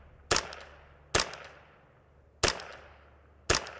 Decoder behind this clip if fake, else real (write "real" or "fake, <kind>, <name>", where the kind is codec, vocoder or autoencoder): real